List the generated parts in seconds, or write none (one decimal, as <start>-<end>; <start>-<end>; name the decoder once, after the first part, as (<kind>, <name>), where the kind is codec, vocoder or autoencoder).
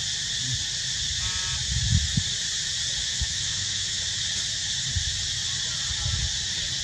3.0-4.0 (autoencoder, DAC-VAE)